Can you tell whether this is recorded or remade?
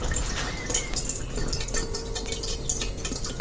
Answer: recorded